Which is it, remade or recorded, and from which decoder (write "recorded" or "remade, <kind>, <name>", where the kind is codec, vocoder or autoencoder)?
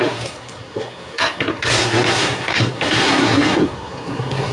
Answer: remade, codec, SNAC